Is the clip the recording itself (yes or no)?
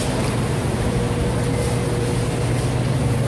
yes